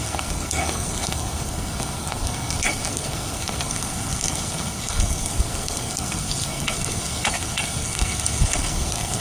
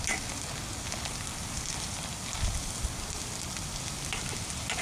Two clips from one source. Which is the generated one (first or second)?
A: first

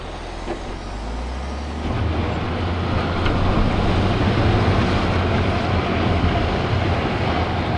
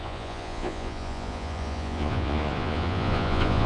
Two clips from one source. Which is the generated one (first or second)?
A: second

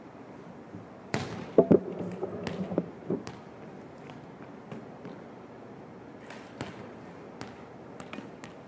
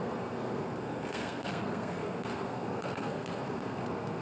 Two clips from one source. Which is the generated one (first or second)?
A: second